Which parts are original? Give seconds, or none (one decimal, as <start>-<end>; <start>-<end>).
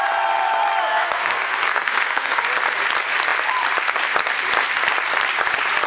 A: 0.0-0.9; 2.4-5.9